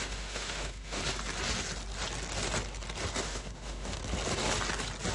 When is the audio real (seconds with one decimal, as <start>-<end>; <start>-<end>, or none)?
1.0-3.2; 4.0-5.1